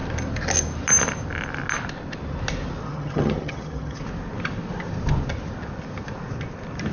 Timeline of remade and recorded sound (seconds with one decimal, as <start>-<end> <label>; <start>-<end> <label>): 0.0-2.8 recorded; 2.8-4.0 remade; 4.0-6.9 recorded